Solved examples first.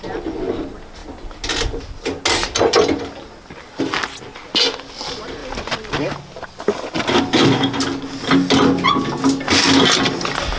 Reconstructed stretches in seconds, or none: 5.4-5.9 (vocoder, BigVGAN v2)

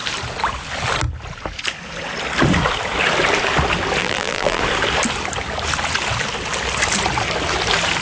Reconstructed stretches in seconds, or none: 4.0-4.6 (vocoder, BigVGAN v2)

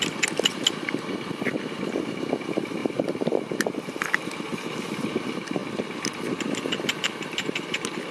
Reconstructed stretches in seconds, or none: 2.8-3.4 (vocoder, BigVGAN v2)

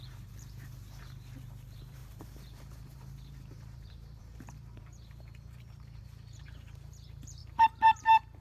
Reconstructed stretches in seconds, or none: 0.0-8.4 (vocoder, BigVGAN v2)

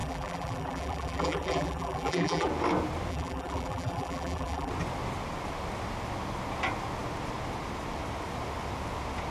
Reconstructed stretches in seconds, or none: 0.0-2.5 (vocoder, BigVGAN v2); 3.1-4.7

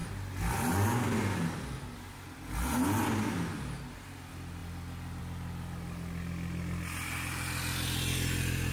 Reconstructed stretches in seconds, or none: none

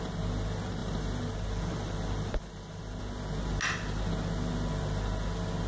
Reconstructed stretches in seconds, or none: 0.8-3.0 (vocoder, BigVGAN v2)